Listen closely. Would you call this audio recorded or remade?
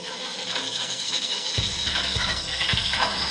remade